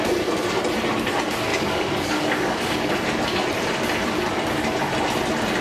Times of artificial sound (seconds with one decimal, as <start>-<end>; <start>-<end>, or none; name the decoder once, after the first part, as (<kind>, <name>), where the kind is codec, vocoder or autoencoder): 1.5-2.9 (codec, DAC)